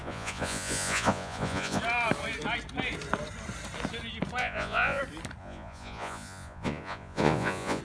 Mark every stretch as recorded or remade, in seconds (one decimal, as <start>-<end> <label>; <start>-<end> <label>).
0.0-1.8 remade; 1.8-4.4 recorded; 4.4-5.0 remade; 5.0-5.4 recorded; 5.4-7.8 remade